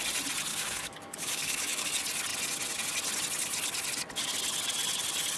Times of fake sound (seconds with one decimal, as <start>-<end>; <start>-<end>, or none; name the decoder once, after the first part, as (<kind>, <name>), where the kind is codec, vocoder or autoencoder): 0.5-1.9 (codec, DAC)